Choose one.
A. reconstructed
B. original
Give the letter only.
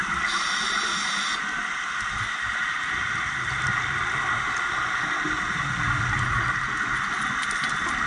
B